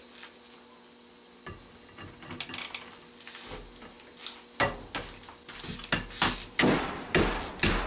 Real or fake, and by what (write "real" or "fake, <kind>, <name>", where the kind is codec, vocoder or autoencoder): real